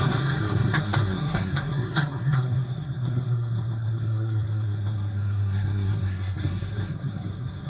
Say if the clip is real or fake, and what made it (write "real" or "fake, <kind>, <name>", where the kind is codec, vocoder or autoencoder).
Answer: fake, codec, SNAC